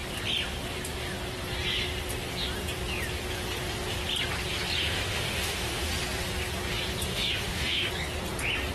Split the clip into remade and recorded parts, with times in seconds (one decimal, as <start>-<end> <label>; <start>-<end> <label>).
0.0-4.8 recorded; 4.8-5.9 remade; 5.9-7.1 recorded; 7.1-7.9 remade; 7.9-8.7 recorded